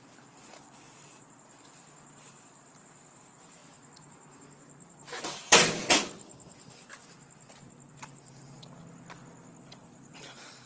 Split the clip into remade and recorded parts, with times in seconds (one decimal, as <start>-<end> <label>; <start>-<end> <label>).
0.0-3.6 remade; 3.6-7.9 recorded; 7.9-8.8 remade; 8.8-9.6 recorded; 9.6-10.7 remade